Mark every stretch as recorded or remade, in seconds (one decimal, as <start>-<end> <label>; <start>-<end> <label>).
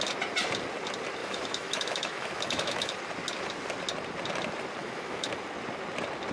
0.0-1.2 recorded; 1.2-2.9 remade; 2.9-4.8 recorded; 4.8-5.3 remade; 5.3-6.3 recorded